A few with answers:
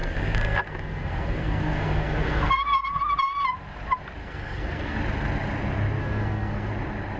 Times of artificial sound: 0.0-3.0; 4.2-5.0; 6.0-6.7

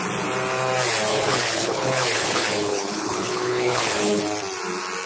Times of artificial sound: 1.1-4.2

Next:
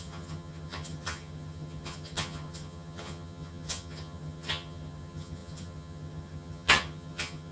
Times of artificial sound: 0.0-7.5

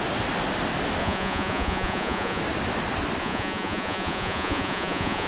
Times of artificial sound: 1.0-2.4; 3.2-5.3

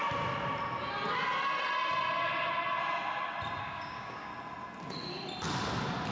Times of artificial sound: 3.6-4.3